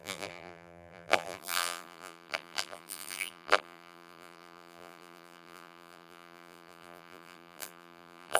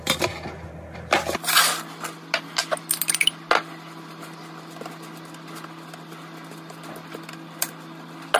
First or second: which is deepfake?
first